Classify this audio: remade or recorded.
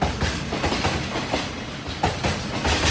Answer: recorded